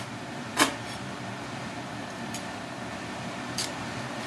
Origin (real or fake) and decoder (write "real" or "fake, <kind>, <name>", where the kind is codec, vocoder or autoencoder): fake, vocoder, BigVGAN v2